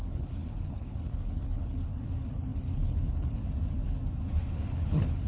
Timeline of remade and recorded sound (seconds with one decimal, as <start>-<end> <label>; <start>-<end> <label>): 0.0-3.4 remade; 3.4-4.3 recorded; 4.3-5.3 remade